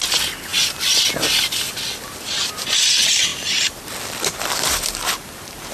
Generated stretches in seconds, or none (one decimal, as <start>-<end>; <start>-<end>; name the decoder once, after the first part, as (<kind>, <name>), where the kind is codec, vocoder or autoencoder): none